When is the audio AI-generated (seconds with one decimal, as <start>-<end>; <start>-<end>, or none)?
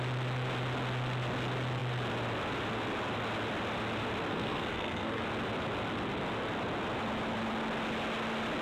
4.3-5.2